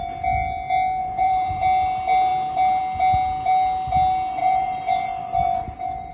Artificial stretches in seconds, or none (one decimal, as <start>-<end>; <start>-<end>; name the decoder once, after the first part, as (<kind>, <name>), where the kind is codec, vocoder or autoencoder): 1.0-1.6 (vocoder, BigVGAN v2); 4.4-6.1

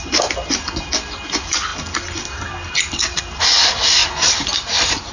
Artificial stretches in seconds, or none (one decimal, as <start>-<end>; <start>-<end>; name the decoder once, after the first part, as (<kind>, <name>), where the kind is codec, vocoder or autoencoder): 4.0-5.1 (vocoder, BigVGAN v2)

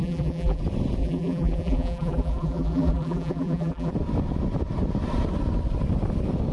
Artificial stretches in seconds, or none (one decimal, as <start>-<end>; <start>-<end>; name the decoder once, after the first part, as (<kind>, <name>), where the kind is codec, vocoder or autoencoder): 0.0-0.6 (vocoder, BigVGAN v2); 1.0-3.9

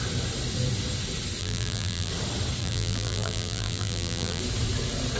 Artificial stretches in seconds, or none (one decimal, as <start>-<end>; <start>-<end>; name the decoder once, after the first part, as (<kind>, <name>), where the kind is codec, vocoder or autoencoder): 1.4-2.1 (vocoder, BigVGAN v2); 2.6-4.4